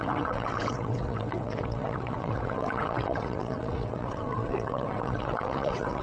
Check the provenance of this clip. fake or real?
fake